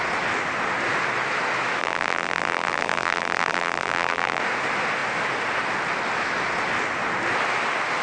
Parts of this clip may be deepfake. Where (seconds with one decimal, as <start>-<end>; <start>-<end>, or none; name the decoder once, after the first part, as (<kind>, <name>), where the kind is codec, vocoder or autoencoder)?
1.8-4.4 (vocoder, BigVGAN v2)